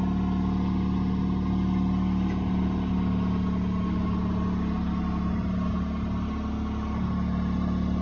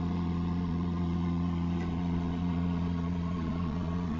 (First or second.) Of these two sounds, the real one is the first